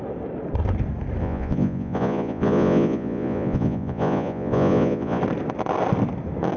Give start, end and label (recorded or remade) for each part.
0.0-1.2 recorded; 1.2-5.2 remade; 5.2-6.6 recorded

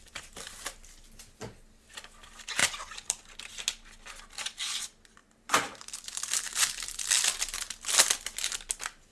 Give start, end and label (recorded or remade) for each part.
0.0-0.6 remade; 0.6-5.2 recorded; 5.2-6.9 remade; 6.9-9.1 recorded

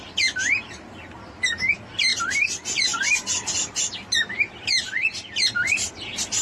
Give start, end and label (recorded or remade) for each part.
0.0-2.1 recorded; 2.1-5.9 remade; 5.9-6.4 recorded

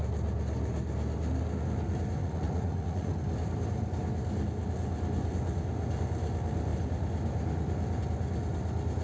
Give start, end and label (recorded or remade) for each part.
0.0-2.2 recorded; 2.2-3.1 remade; 3.1-9.0 recorded

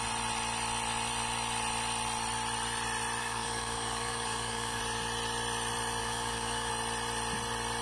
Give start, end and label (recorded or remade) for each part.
0.0-3.2 recorded; 3.2-4.8 remade; 4.8-6.0 recorded; 6.0-6.7 remade; 6.7-7.8 recorded

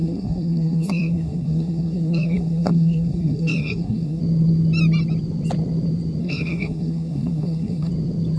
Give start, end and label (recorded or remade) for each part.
0.0-4.2 remade; 4.2-6.2 recorded; 6.2-7.9 remade; 7.9-8.4 recorded

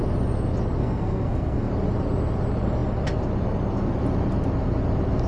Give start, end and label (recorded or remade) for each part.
0.0-0.8 recorded; 0.8-1.7 remade; 1.7-5.3 recorded